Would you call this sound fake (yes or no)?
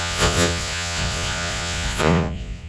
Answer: yes